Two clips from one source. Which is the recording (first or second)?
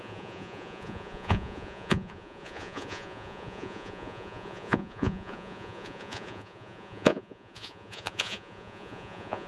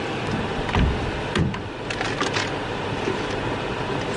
second